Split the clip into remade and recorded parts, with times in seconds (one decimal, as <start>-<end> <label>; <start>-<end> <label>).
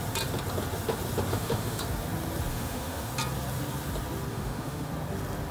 0.0-1.3 recorded; 1.3-1.8 remade; 1.8-2.5 recorded; 2.5-3.1 remade; 3.1-4.3 recorded; 4.3-4.9 remade; 4.9-5.5 recorded